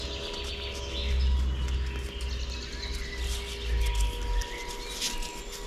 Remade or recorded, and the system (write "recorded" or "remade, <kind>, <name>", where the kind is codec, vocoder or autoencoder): recorded